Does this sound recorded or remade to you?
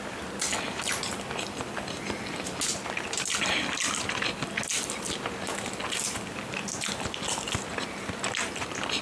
recorded